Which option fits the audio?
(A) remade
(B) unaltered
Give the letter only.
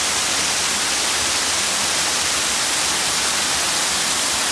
B